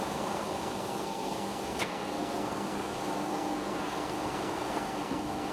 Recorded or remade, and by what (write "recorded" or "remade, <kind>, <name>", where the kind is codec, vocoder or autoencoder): remade, codec, SNAC